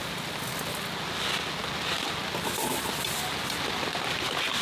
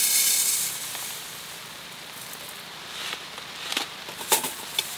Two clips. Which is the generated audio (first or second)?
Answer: second